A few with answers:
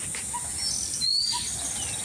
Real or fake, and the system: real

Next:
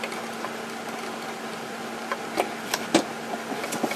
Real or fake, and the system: real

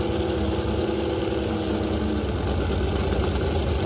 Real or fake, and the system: real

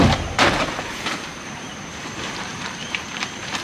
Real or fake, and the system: fake, vocoder, BigVGAN v2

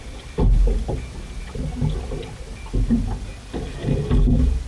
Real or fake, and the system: real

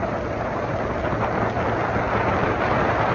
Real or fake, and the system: real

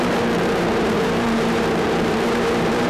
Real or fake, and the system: fake, vocoder, BigVGAN v2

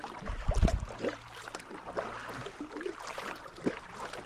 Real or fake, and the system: real